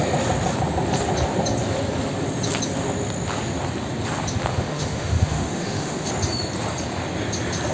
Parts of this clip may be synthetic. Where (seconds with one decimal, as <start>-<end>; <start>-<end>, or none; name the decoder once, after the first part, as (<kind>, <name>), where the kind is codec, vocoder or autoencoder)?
4.5-6.1 (autoencoder, DAC-VAE)